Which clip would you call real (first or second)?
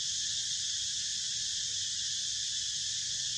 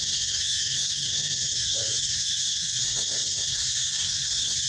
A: first